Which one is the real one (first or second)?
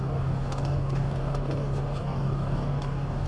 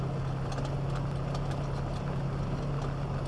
second